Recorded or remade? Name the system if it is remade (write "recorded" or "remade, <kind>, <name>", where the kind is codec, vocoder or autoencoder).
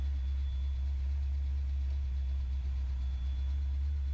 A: recorded